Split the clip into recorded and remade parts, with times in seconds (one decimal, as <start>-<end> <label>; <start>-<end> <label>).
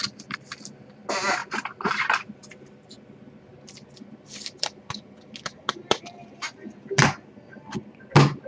0.0-8.5 recorded